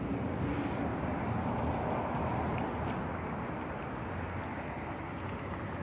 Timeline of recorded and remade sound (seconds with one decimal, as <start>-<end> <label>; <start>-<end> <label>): 0.0-5.8 recorded